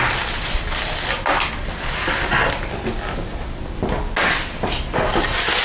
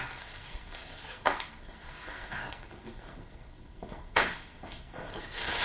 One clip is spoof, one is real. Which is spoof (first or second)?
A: second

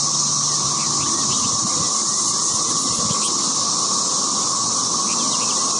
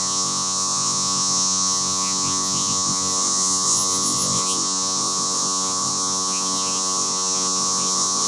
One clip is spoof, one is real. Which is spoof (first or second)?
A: second